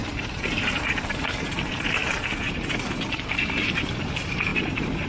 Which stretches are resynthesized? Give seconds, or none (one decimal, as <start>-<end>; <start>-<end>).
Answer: 0.0-5.1